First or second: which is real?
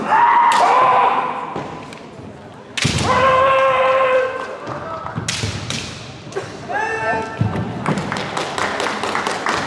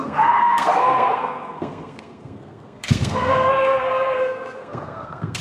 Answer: first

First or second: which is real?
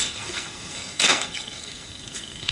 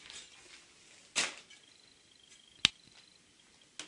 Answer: second